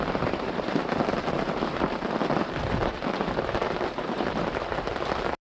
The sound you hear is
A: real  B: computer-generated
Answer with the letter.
B